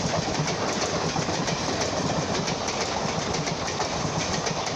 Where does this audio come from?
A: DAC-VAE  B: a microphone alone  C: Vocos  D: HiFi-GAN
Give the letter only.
B